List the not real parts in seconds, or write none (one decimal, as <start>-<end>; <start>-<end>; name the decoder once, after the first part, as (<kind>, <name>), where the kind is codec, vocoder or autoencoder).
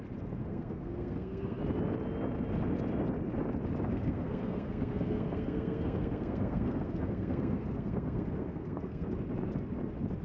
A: 0.4-1.6 (codec, SNAC); 3.9-9.1